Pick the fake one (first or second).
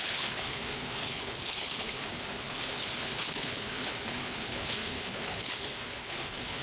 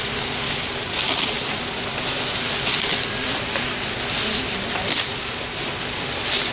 first